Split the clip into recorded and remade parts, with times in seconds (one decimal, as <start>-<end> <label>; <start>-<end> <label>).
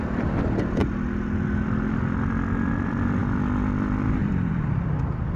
0.0-0.8 remade; 0.8-2.7 recorded; 2.7-5.4 remade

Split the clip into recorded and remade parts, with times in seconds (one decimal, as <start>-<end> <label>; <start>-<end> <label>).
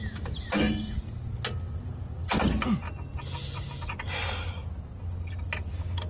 0.0-6.1 recorded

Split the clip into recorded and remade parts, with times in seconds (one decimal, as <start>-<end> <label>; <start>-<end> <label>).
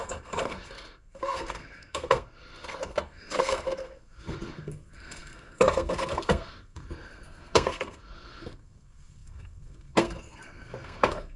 0.0-11.4 remade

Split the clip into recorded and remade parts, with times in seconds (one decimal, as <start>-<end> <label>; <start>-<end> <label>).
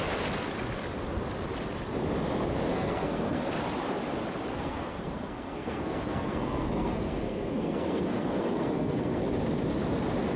0.0-2.7 recorded; 2.7-3.5 remade; 3.5-4.5 recorded; 4.5-9.3 remade; 9.3-10.4 recorded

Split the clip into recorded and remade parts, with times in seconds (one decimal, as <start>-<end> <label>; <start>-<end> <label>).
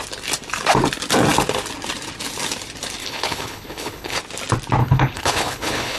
0.0-3.0 recorded; 3.0-4.2 remade; 4.2-4.8 recorded; 4.8-6.0 remade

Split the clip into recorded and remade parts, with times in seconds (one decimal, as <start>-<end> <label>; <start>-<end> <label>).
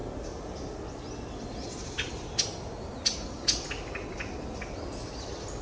0.0-5.6 recorded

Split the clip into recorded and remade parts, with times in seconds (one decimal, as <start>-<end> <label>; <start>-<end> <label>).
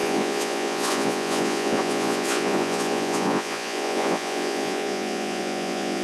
0.0-6.0 remade